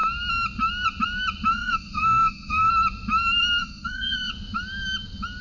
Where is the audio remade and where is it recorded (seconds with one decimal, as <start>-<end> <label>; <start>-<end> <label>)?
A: 0.0-1.5 recorded; 1.5-2.7 remade; 2.7-3.6 recorded; 3.6-4.3 remade; 4.3-5.4 recorded